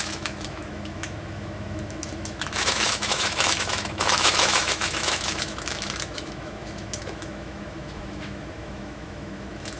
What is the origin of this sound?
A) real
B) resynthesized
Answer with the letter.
B